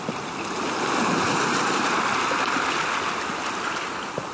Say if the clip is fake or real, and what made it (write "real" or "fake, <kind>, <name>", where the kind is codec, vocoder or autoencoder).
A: real